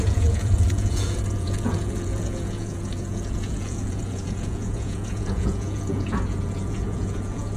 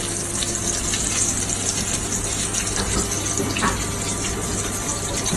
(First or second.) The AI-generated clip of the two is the first